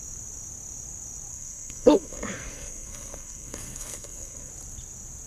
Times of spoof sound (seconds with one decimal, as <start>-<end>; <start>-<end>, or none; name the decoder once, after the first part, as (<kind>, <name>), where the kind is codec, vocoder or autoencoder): 1.3-4.5 (codec, SNAC)